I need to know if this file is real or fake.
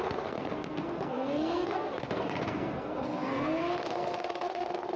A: fake